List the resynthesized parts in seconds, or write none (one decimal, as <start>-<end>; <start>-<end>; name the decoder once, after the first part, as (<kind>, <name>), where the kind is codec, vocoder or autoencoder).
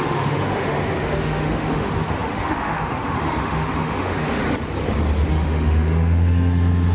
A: 0.0-4.4 (autoencoder, DAC-VAE); 5.3-6.9